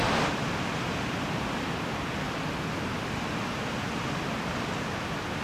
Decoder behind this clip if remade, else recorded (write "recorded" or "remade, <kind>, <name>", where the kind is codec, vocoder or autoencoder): recorded